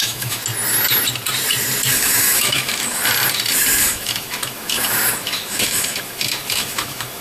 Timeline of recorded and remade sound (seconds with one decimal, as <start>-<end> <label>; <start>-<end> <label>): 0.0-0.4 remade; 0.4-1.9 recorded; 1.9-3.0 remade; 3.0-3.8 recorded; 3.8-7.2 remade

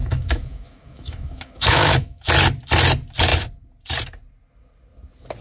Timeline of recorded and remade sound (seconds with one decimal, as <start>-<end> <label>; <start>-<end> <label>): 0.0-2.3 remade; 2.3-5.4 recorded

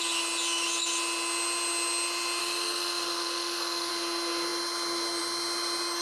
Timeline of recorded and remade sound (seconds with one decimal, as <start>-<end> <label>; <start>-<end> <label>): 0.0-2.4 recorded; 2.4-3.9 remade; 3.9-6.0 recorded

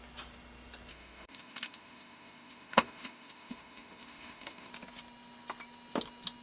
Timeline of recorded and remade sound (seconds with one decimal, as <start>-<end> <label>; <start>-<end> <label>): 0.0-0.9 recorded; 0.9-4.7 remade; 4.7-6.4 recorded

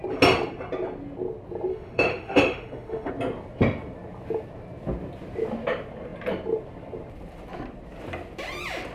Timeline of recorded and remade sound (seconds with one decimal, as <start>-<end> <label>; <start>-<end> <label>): 0.0-1.7 recorded; 1.7-3.1 remade; 3.1-8.9 recorded

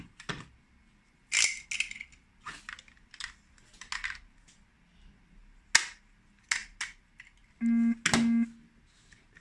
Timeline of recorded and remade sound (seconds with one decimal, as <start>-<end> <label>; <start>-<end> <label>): 0.0-9.4 recorded

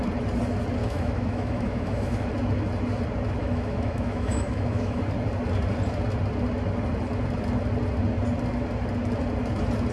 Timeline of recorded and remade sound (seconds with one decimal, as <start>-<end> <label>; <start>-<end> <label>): 0.0-0.8 recorded; 0.8-2.3 remade; 2.3-3.4 recorded; 3.4-5.0 remade; 5.0-9.9 recorded